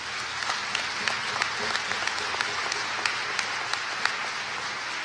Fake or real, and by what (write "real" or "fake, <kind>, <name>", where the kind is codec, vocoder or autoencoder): real